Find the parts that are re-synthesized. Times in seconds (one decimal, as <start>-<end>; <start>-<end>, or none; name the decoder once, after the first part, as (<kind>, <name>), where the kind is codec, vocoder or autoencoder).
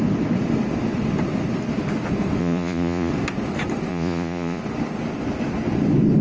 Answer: 2.4-3.1 (vocoder, Vocos); 3.9-4.6